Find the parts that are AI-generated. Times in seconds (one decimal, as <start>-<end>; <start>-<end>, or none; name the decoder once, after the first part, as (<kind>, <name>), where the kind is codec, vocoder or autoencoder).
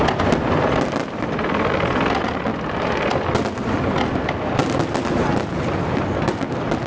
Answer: none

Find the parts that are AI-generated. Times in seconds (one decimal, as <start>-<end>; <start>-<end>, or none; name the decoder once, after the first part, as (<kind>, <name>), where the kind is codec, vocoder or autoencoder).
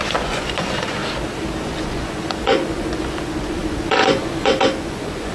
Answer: 0.0-1.0 (vocoder, Vocos); 1.6-5.3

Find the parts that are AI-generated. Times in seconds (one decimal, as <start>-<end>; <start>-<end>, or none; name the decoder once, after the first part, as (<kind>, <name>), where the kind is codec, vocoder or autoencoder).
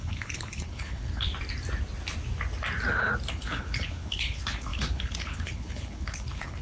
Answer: 0.0-1.3 (codec, HILCodec); 3.3-6.6